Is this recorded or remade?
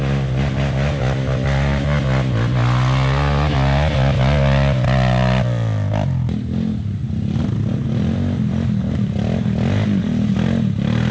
recorded